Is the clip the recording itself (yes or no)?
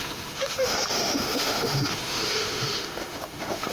no